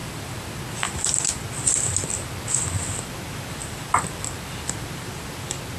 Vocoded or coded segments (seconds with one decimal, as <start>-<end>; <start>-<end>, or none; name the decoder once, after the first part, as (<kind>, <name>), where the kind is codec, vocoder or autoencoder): 0.0-2.3 (vocoder, BigVGAN v2); 3.6-5.1